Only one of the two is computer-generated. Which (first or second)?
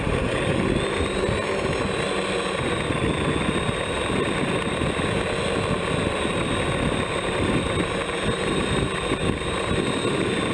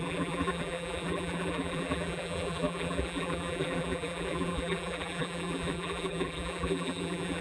second